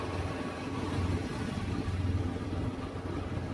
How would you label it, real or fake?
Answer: real